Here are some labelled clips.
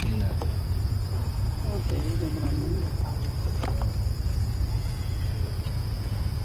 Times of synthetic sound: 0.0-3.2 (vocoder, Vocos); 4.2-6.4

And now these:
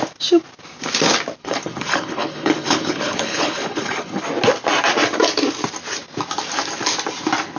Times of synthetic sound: 1.4-4.2 (codec, HILCodec)

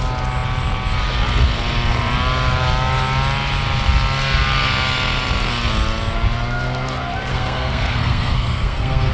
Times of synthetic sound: 7.3-9.1 (codec, SNAC)